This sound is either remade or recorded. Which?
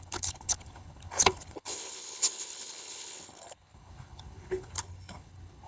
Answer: remade